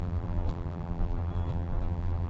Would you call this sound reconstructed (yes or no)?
yes